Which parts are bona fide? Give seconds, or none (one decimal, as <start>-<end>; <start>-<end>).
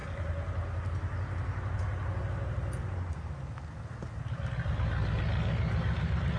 0.0-6.4